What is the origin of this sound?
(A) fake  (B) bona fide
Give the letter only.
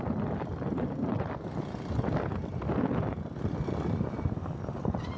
B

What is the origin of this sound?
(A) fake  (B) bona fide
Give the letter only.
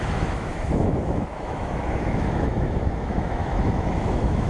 A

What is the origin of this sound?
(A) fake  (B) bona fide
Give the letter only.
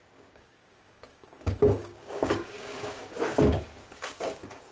A